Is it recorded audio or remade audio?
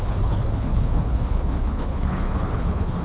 remade